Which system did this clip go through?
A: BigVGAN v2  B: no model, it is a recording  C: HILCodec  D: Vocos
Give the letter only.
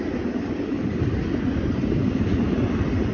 B